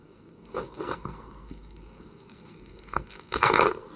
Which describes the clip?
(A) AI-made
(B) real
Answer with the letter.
A